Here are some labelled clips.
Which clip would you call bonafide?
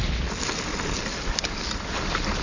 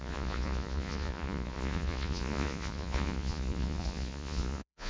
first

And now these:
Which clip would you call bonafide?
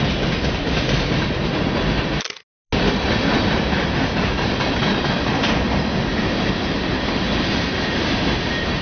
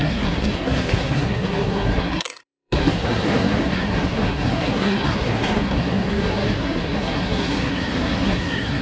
first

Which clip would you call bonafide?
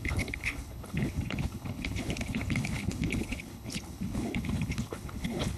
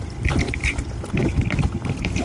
second